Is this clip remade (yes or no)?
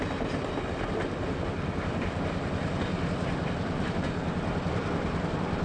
no